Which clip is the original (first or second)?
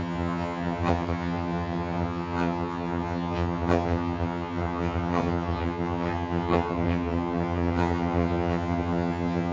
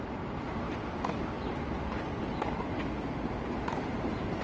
second